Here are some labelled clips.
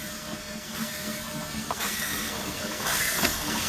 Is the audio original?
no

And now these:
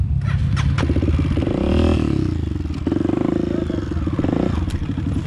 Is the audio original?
yes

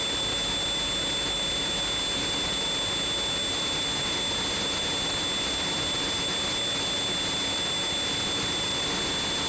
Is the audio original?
yes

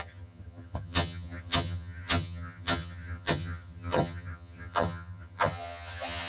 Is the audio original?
no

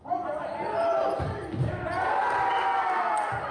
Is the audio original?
yes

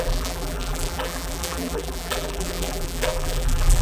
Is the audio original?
no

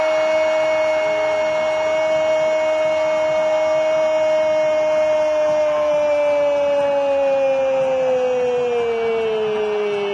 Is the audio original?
yes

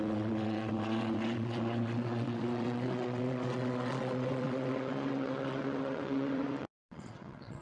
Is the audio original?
no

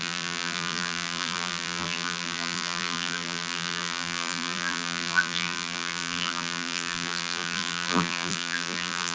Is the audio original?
no